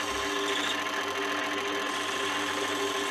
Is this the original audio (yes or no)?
yes